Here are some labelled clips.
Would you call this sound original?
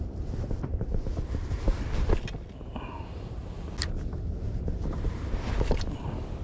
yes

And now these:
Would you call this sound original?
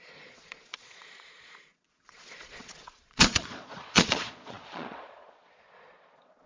no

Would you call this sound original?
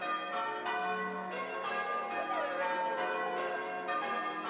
yes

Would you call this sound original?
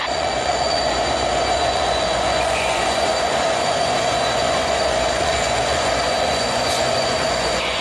no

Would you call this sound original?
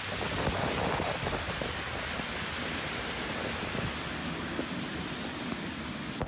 yes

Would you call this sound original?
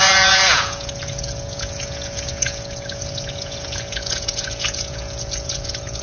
no